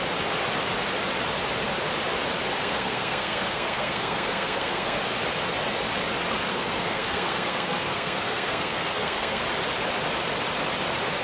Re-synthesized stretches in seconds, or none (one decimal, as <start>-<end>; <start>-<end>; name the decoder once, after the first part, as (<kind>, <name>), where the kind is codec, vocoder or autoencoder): 2.6-5.0 (codec, SNAC); 6.5-9.4